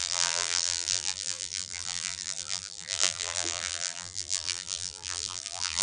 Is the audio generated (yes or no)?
yes